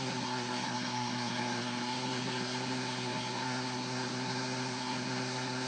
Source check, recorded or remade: remade